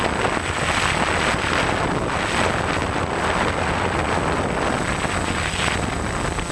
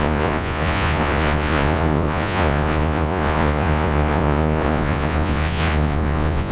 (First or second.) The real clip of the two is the first